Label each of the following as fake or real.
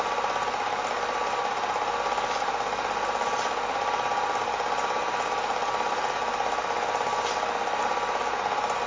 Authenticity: real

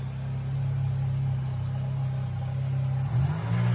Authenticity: real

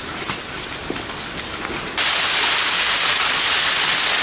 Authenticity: real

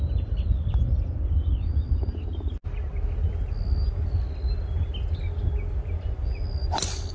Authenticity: real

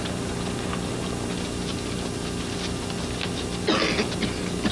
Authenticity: real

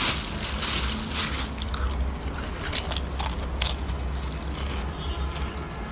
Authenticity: real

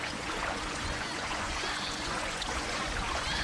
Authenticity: fake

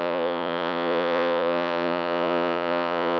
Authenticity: fake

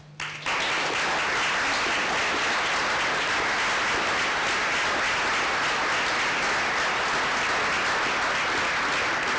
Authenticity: real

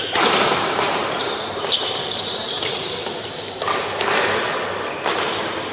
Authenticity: real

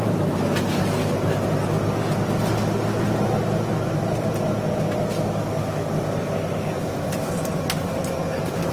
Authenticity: real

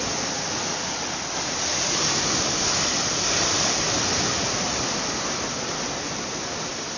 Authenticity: real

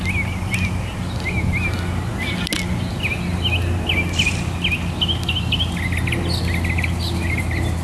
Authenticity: real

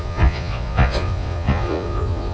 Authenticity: fake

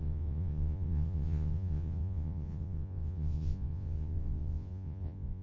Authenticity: fake